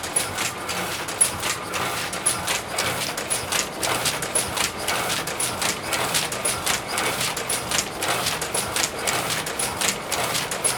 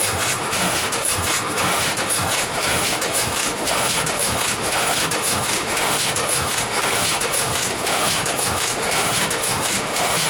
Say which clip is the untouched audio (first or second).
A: first